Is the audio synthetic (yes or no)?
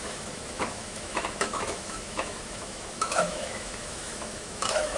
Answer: yes